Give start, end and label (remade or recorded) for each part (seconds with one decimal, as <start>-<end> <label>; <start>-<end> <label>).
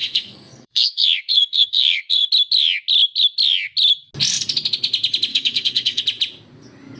0.0-2.3 remade; 2.3-5.3 recorded; 5.3-6.0 remade; 6.0-7.0 recorded